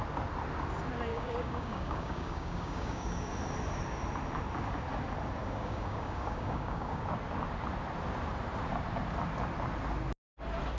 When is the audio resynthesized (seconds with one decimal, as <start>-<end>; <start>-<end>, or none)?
1.1-3.3; 5.4-7.0